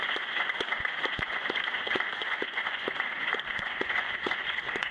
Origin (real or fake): fake